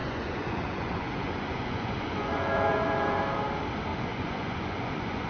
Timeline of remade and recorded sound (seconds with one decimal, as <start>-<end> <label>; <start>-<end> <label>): 0.0-3.2 remade; 3.2-3.9 recorded; 3.9-5.3 remade